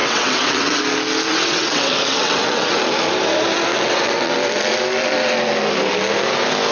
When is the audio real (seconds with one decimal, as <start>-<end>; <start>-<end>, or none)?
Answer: 0.8-1.3; 2.8-3.7; 4.3-6.7